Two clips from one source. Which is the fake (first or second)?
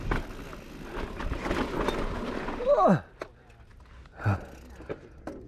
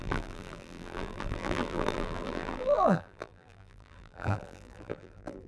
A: second